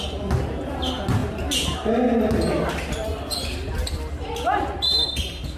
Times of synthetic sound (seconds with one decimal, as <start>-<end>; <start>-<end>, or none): none